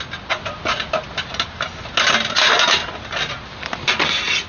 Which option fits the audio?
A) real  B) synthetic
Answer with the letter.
A